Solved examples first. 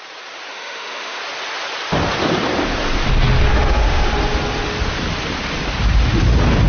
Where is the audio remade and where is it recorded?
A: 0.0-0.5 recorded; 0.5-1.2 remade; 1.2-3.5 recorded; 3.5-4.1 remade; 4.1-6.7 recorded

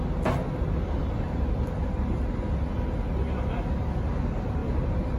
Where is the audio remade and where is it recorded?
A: 0.0-5.2 recorded